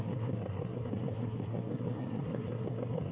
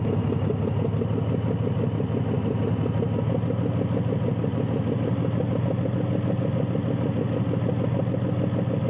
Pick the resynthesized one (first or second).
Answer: first